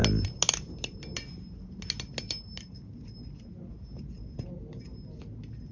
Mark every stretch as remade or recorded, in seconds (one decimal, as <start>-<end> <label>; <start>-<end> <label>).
0.0-5.7 recorded

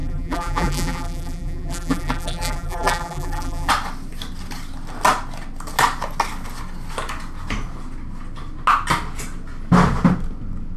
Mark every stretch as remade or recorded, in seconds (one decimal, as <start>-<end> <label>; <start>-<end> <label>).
0.0-3.7 remade; 3.7-10.8 recorded

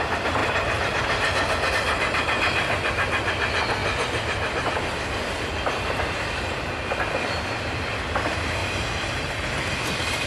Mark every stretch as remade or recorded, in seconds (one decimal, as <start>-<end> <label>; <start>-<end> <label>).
0.0-10.3 recorded

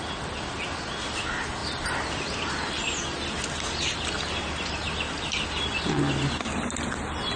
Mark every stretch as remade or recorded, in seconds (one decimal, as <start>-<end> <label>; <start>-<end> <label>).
0.0-7.4 recorded